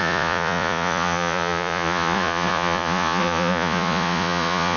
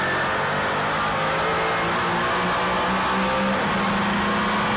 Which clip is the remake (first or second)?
first